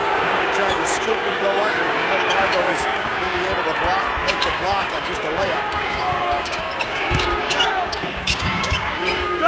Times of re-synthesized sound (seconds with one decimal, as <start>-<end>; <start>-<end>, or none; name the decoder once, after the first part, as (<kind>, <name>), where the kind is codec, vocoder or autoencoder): 0.0-3.5 (codec, DAC); 4.2-9.5